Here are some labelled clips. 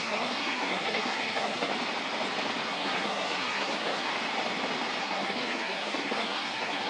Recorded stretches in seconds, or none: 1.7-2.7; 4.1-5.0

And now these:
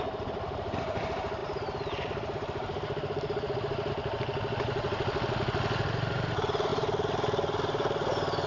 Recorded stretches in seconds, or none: 0.0-1.4; 3.9-6.7

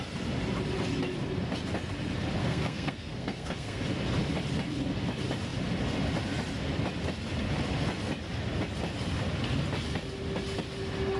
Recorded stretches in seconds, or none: 0.0-2.4; 3.8-11.2

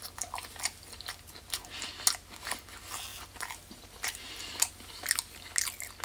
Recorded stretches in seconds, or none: 0.0-3.1; 4.7-6.0